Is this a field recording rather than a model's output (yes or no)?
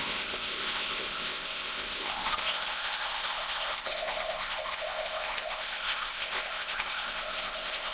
no